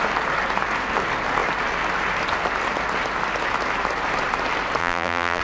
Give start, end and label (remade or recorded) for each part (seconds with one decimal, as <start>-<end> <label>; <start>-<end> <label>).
0.0-4.8 recorded; 4.8-5.4 remade